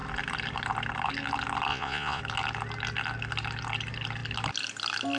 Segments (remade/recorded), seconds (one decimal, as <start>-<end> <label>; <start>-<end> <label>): 0.0-1.7 recorded; 1.7-2.2 remade; 2.2-5.2 recorded

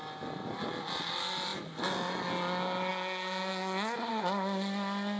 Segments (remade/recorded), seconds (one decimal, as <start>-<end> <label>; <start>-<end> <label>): 0.0-5.2 recorded